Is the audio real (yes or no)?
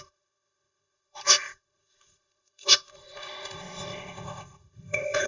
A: no